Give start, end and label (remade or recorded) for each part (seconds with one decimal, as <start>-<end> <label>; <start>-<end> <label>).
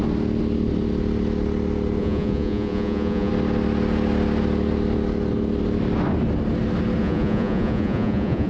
0.0-2.0 recorded; 2.0-3.3 remade; 3.3-7.0 recorded; 7.0-8.5 remade